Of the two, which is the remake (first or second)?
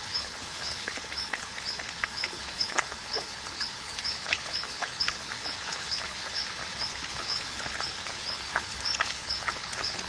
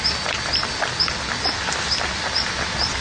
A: first